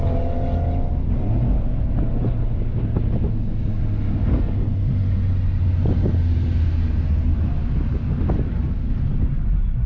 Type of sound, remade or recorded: recorded